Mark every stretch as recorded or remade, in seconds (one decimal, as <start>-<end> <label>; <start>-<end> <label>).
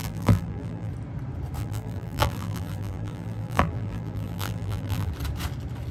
0.0-0.9 remade; 0.9-1.6 recorded; 1.6-5.1 remade; 5.1-5.9 recorded